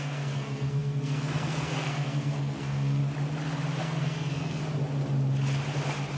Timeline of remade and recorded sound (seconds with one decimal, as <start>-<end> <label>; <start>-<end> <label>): 0.0-3.0 remade; 3.0-3.8 recorded; 3.8-4.6 remade; 4.6-6.2 recorded